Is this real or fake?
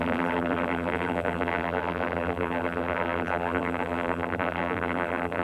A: fake